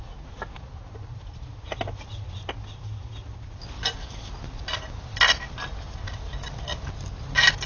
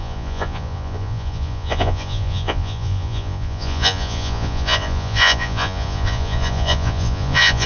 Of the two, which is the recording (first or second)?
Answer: first